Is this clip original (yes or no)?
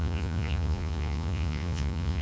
no